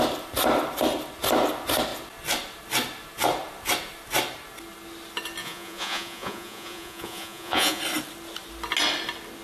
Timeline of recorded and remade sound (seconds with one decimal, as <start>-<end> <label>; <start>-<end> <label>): 0.0-5.4 recorded; 5.4-7.8 remade; 7.8-9.4 recorded